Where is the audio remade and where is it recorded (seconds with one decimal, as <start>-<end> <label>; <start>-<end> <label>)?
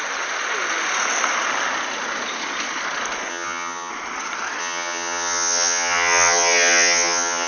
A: 0.0-3.3 recorded; 3.3-3.9 remade; 3.9-4.6 recorded; 4.6-7.5 remade